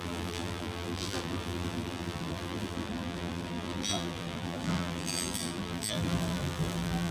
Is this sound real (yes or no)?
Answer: no